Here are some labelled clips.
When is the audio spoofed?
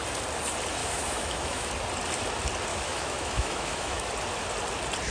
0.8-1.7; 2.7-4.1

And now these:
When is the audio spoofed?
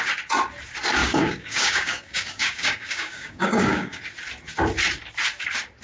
1.0-4.0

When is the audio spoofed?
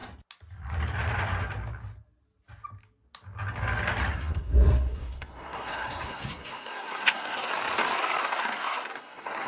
4.1-7.5; 8.2-9.5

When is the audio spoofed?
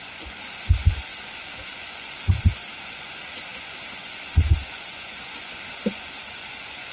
0.0-6.9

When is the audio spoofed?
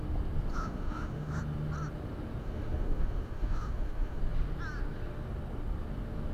0.5-1.4; 2.4-4.2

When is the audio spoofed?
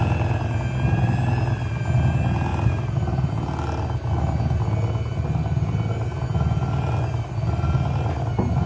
2.5-3.3